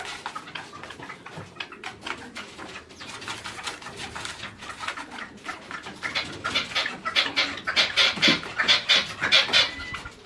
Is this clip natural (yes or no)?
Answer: yes